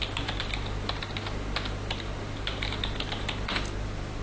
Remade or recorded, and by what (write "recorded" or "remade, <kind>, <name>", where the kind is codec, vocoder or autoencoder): recorded